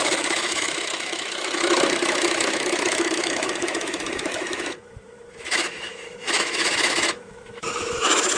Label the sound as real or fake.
fake